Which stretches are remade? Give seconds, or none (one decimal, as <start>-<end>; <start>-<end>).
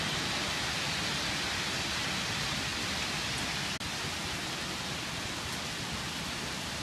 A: none